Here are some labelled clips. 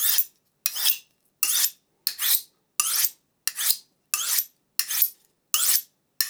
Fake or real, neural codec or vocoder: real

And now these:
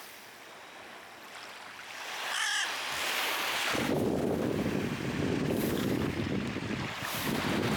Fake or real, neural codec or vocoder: real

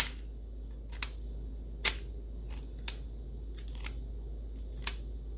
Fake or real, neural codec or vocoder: real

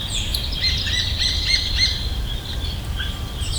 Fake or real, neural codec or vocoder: fake, vocoder, BigVGAN v2